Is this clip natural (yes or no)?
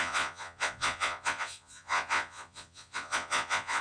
no